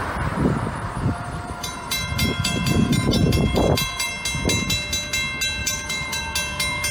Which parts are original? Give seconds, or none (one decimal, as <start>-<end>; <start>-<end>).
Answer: 4.1-5.6; 6.2-6.9